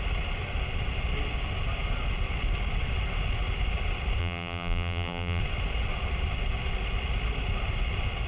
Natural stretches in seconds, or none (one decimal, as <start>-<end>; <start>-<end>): 0.0-4.2; 5.4-8.3